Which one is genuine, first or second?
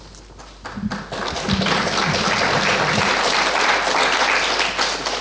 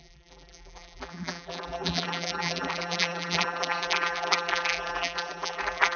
first